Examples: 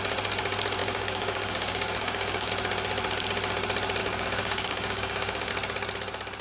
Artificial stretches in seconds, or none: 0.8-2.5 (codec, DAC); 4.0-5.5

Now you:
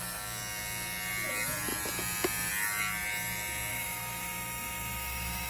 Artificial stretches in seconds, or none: 3.7-5.5 (autoencoder, DAC-VAE)